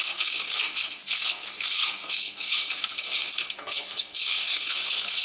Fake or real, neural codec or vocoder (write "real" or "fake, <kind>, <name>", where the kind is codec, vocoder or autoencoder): fake, codec, SNAC